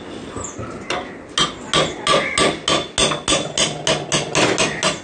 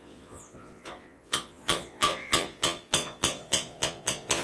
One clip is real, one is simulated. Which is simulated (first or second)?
second